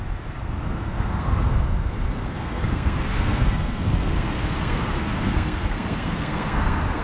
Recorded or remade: remade